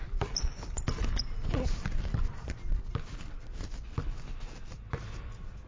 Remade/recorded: recorded